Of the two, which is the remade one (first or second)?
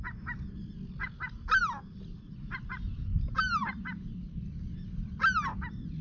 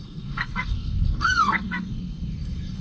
second